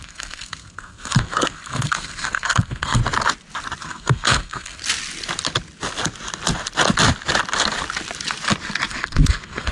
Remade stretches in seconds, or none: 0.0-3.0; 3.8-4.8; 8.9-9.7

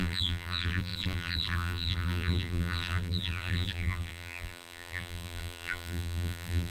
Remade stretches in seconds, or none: 0.0-6.7